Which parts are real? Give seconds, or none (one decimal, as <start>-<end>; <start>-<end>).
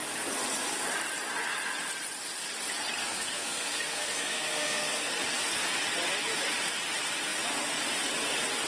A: 0.0-3.0; 5.1-8.7